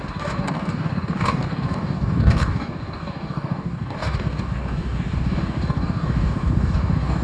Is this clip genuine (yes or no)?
no